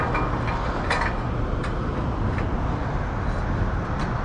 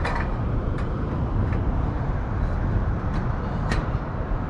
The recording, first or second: first